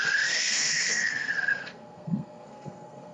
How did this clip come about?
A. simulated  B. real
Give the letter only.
A